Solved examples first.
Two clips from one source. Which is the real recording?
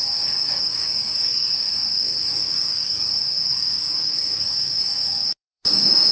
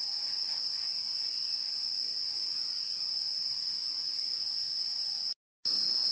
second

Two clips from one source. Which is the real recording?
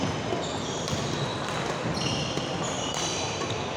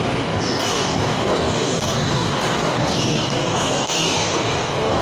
first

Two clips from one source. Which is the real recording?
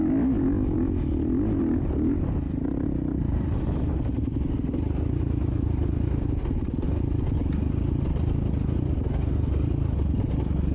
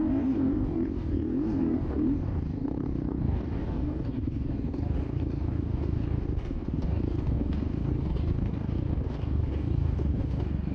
first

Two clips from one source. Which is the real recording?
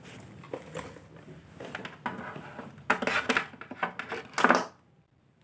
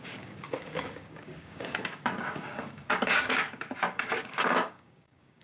first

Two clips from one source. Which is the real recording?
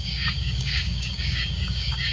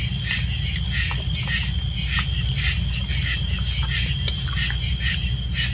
second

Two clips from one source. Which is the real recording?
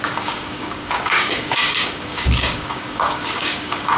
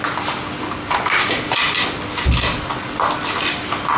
second